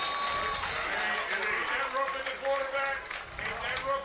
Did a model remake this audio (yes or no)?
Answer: no